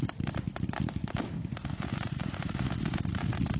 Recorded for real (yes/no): yes